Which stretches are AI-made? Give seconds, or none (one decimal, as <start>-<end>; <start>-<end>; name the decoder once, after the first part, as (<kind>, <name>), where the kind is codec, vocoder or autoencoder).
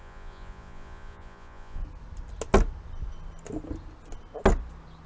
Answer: 0.0-1.8 (vocoder, Vocos)